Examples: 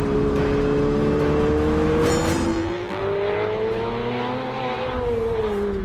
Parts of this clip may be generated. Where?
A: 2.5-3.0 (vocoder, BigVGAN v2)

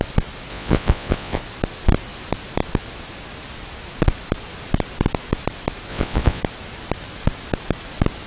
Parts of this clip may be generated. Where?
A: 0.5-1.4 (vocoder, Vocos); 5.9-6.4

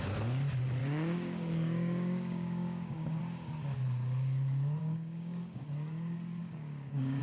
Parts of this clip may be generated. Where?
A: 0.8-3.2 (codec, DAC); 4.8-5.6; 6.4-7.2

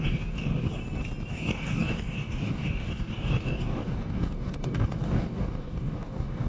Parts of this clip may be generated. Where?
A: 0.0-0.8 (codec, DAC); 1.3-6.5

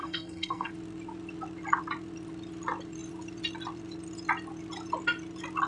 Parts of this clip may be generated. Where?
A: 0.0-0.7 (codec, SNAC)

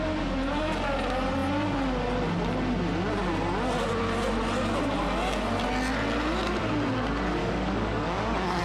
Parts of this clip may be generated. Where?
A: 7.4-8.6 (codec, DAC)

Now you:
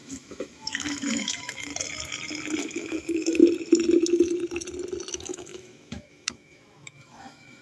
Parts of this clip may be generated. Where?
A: 0.0-1.7 (autoencoder, DAC-VAE); 2.6-3.4; 5.1-7.6